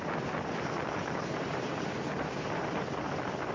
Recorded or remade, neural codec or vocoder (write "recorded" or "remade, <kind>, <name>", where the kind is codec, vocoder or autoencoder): recorded